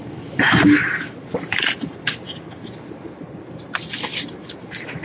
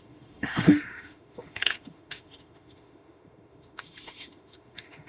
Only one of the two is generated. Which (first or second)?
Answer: second